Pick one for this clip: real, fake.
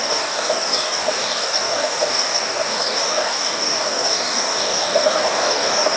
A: fake